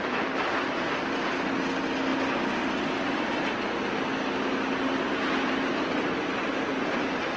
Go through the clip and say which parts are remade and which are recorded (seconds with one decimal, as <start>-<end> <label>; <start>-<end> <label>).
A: 0.0-7.4 recorded